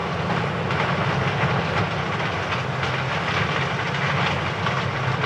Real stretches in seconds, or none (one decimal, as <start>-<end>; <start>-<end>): 0.0-5.3

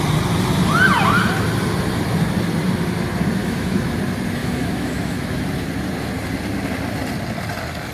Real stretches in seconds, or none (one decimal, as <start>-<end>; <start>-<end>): 0.0-3.4; 4.0-4.4; 5.4-7.9

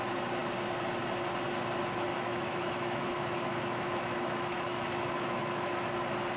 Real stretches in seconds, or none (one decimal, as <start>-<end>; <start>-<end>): 0.0-2.1; 5.9-6.4

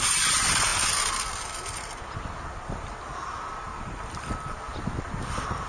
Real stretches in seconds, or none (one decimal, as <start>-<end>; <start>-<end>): 0.0-5.7

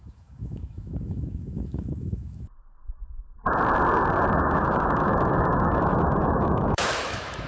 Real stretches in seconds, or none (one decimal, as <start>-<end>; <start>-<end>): 2.8-4.4

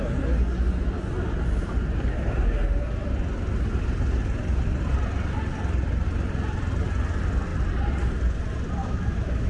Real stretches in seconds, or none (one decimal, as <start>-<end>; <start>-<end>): 0.0-8.8

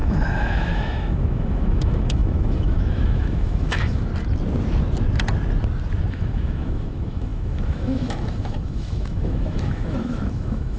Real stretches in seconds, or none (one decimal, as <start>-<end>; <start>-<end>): 4.1-6.1